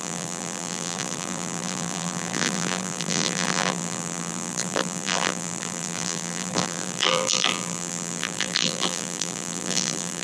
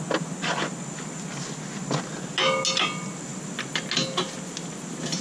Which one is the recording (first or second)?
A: second